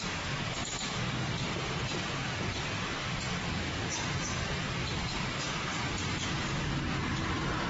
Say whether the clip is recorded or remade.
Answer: remade